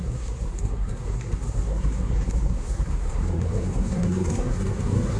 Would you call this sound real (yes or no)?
no